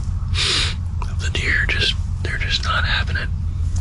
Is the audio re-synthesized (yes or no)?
no